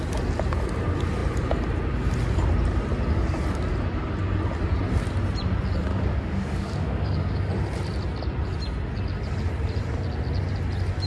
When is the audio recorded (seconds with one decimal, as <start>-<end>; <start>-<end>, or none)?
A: 0.0-5.9; 7.5-11.1